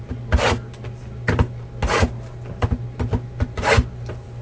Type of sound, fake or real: real